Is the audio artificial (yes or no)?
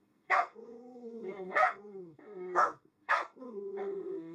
yes